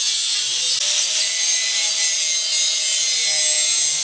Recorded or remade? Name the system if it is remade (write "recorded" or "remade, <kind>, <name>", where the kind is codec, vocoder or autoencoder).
recorded